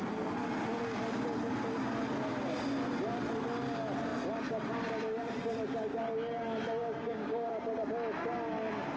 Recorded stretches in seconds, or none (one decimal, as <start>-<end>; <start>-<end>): 0.0-6.8; 7.5-9.0